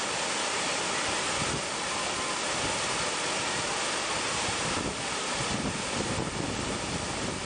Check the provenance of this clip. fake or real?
real